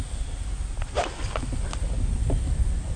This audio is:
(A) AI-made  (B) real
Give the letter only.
B